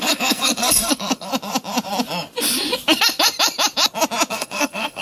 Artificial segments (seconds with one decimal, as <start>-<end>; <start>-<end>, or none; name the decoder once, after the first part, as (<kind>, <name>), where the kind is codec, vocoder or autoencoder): 0.0-1.3 (codec, SNAC); 4.3-5.0